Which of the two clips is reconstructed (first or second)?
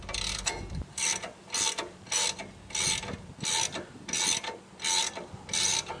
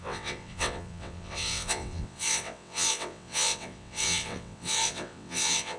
second